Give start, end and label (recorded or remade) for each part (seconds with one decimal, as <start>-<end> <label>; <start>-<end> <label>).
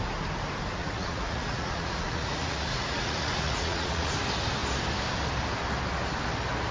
0.0-0.8 recorded; 0.8-4.1 remade; 4.1-6.7 recorded